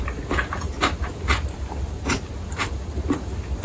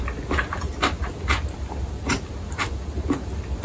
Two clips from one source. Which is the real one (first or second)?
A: second